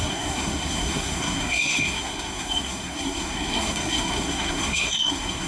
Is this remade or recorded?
remade